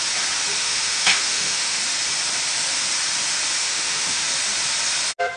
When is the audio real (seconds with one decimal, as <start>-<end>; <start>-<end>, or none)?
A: 0.0-0.6; 1.8-3.6; 4.2-5.4